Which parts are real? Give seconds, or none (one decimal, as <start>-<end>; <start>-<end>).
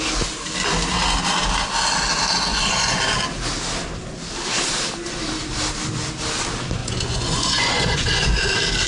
0.0-2.5; 3.0-6.8; 8.4-8.9